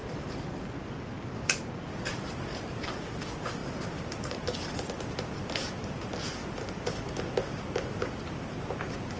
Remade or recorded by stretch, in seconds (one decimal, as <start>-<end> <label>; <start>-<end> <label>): 0.0-0.5 remade; 0.5-9.2 recorded